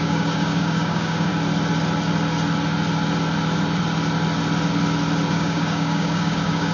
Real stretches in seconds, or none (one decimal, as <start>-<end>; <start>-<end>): 1.3-5.3